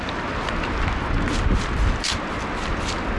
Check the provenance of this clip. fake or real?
real